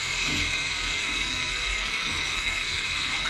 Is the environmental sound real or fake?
fake